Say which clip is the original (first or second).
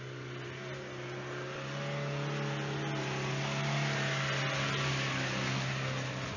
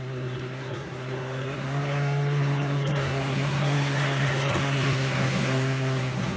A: first